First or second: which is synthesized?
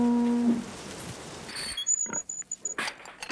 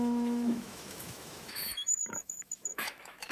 second